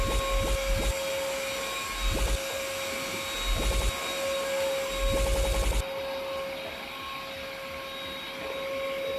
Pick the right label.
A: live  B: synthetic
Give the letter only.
A